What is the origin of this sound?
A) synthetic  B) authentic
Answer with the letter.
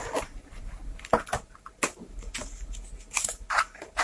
B